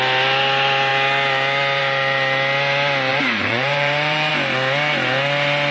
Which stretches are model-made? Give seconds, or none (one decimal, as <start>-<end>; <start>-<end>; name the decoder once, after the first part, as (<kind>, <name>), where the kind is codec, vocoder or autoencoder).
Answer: 3.1-4.3 (vocoder, BigVGAN v2)